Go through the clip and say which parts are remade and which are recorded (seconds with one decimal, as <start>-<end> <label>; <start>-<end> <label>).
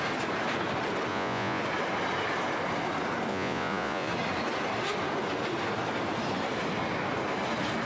0.0-1.1 recorded; 1.1-1.6 remade; 1.6-3.3 recorded; 3.3-4.1 remade; 4.1-7.9 recorded